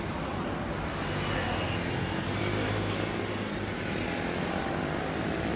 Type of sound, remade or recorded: recorded